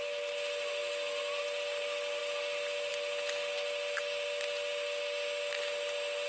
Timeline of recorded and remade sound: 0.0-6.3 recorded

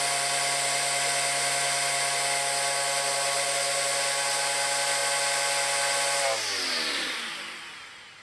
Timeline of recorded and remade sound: 0.0-8.2 recorded

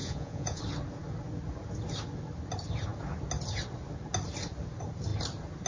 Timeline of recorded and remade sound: 0.0-0.6 remade; 0.6-5.7 recorded